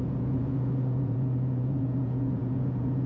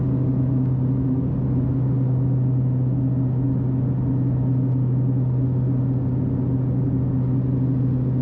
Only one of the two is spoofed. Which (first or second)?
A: first